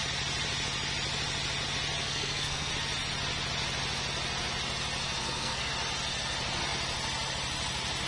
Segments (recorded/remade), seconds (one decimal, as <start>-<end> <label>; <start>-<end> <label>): 0.0-2.0 recorded; 2.0-2.7 remade; 2.7-5.2 recorded; 5.2-5.7 remade; 5.7-8.1 recorded